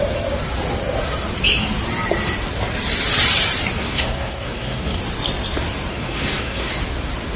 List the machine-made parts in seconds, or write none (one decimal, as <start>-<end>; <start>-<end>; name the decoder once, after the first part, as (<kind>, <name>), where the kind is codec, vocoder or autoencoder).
3.8-5.0 (codec, SNAC); 5.9-6.7